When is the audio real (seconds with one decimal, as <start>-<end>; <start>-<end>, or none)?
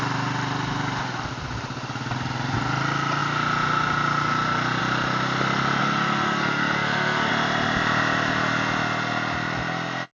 0.0-5.8; 7.3-10.1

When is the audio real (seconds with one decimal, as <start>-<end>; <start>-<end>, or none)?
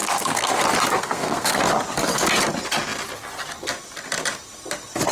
0.5-0.9; 1.6-5.1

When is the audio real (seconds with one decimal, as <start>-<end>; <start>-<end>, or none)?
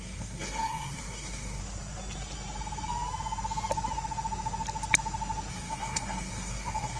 1.6-5.5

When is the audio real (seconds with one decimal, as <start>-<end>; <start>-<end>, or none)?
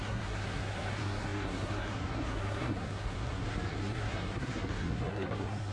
none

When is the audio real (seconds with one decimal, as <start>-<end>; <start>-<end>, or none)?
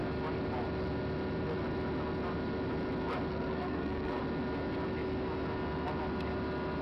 0.0-3.3; 4.2-6.8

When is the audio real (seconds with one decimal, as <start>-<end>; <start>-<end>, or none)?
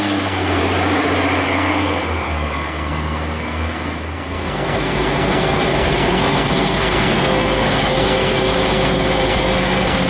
0.6-1.4